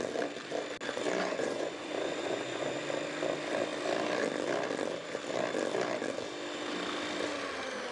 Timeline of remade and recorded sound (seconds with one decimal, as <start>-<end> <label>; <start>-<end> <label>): 0.0-1.2 recorded; 1.2-2.8 remade; 2.8-7.9 recorded